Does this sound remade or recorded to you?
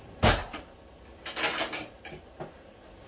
recorded